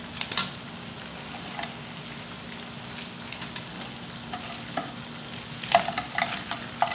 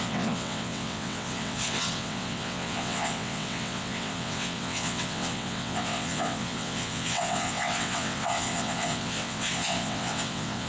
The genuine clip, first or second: first